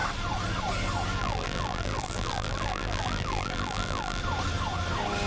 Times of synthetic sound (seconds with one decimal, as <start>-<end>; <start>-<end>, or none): 1.2-4.2